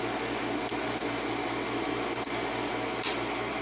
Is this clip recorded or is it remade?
recorded